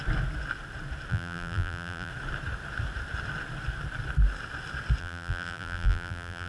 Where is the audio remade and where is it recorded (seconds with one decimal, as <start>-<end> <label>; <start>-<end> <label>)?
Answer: 0.0-1.1 recorded; 1.1-2.1 remade; 2.1-5.0 recorded; 5.0-6.5 remade